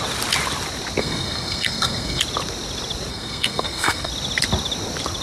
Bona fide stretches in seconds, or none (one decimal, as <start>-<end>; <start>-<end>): 0.0-1.0; 2.2-3.1; 4.1-5.2